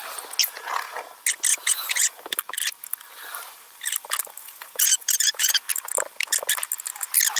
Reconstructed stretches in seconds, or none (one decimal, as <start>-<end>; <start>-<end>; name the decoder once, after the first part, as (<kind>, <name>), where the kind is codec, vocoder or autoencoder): 0.4-1.0 (vocoder, Vocos); 1.5-2.3; 4.4-5.7